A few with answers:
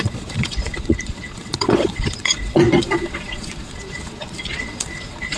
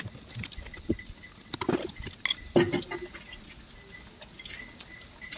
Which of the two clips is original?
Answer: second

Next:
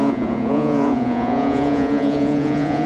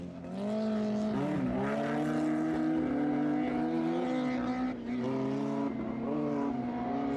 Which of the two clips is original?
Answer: second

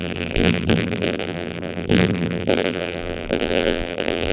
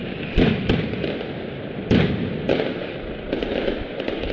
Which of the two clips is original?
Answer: second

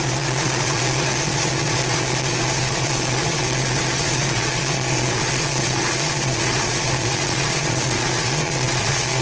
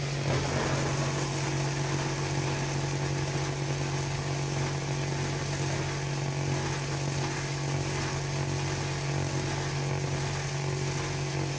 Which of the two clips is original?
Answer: second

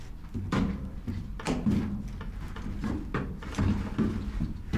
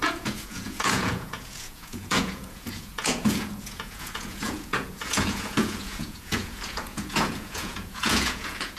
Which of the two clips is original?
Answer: first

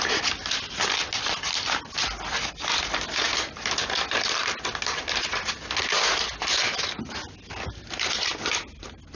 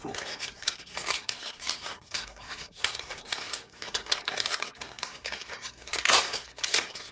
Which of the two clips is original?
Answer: first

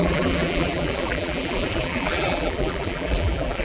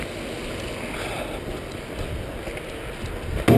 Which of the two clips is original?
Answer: second